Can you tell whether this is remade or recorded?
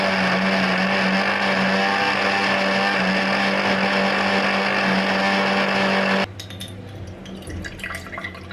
recorded